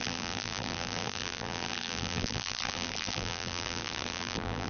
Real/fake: fake